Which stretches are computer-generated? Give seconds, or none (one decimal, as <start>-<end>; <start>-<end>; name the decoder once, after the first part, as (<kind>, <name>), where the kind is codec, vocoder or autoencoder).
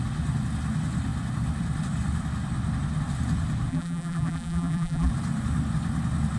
3.7-5.1 (vocoder, BigVGAN v2)